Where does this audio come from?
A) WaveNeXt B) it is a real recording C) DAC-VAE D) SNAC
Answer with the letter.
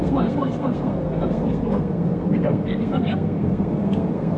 D